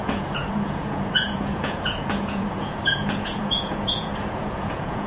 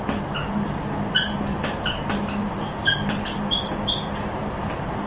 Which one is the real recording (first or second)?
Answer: second